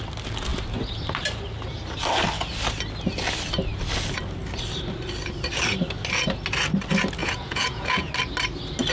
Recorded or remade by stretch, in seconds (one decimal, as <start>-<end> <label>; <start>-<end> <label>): 0.0-7.2 recorded; 7.2-8.1 remade; 8.1-8.9 recorded